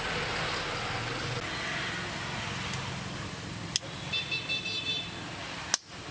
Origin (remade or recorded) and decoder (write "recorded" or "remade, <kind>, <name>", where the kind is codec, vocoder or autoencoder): recorded